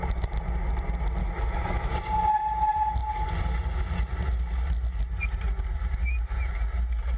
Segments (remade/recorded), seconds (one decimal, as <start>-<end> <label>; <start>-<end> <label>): 0.0-1.2 recorded; 1.2-1.9 remade; 1.9-7.2 recorded